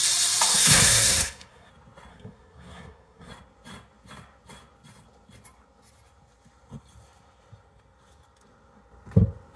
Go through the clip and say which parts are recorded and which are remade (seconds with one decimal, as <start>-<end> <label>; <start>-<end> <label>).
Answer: 0.0-0.5 recorded; 0.5-1.7 remade; 1.7-2.1 recorded; 2.1-3.3 remade; 3.3-9.6 recorded